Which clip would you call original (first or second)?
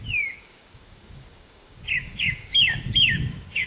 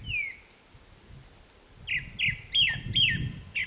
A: second